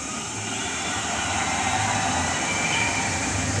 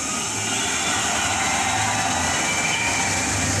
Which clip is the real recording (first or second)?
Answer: second